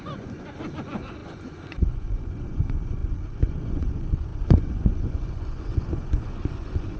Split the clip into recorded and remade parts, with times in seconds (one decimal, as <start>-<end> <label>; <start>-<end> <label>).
0.0-7.0 remade